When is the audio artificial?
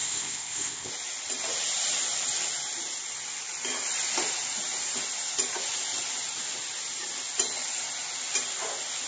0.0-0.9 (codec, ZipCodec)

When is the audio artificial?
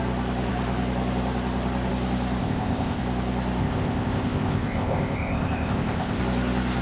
2.4-3.0 (codec, ZipCodec); 3.6-6.2